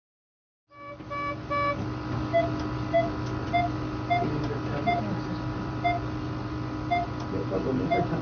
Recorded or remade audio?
remade